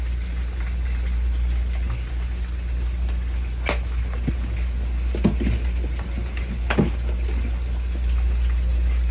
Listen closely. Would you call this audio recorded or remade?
recorded